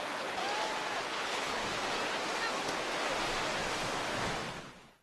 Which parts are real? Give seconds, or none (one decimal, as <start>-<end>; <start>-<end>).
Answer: 0.4-1.0; 1.6-4.6